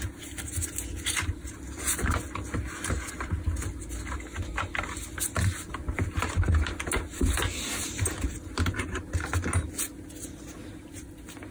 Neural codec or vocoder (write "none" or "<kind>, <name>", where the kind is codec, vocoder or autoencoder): none